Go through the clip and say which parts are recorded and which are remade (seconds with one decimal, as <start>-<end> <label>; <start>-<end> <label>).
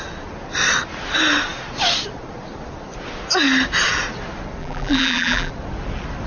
0.0-4.6 recorded; 4.6-5.5 remade; 5.5-6.3 recorded